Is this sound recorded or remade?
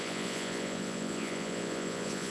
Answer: remade